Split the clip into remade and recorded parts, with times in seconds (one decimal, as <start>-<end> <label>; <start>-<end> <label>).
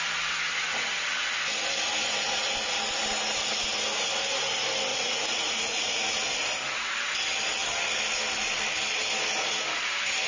0.0-4.9 recorded; 4.9-6.0 remade; 6.0-10.3 recorded